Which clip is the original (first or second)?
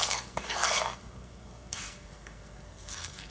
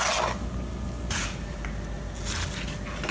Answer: second